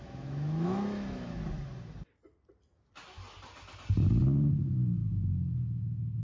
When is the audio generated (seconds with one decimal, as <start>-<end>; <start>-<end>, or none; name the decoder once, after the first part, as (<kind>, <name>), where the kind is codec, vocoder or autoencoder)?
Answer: 0.0-1.4 (autoencoder, DAC-VAE); 4.5-6.2